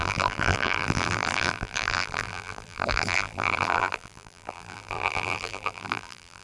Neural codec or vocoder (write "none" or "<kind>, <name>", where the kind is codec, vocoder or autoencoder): vocoder, BigVGAN v2